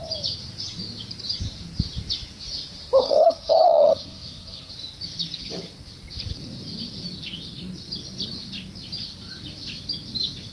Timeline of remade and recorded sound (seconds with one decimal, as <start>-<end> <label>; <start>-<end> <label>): 0.0-3.0 recorded; 3.0-4.7 remade; 4.7-10.5 recorded